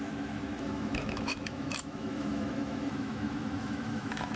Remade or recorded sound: remade